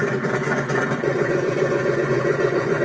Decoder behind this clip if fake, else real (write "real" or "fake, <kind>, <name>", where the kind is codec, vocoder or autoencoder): fake, vocoder, Vocos